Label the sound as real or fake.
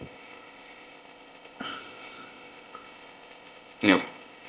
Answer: fake